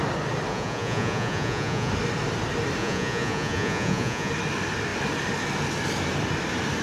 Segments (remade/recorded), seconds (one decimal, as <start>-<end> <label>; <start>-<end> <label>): 0.0-0.5 recorded; 0.5-1.9 remade; 1.9-2.8 recorded; 2.8-4.3 remade; 4.3-6.8 recorded